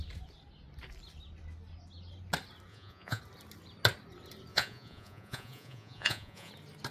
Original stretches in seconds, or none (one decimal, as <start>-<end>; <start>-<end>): 0.0-2.7; 3.2-4.5; 6.5-6.9